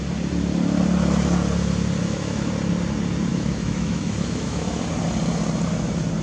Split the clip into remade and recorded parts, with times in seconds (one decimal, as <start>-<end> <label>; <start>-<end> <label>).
0.0-2.0 recorded; 2.0-2.5 remade; 2.5-3.3 recorded; 3.3-4.8 remade; 4.8-6.2 recorded